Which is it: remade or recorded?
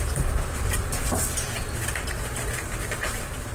remade